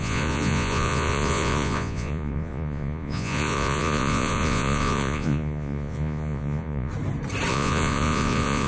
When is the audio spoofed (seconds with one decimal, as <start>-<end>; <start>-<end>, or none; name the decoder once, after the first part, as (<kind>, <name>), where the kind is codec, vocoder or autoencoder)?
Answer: 0.0-6.9 (vocoder, Vocos); 7.5-8.7